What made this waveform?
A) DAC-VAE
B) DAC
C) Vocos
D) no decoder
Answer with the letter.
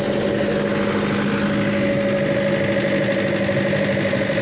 D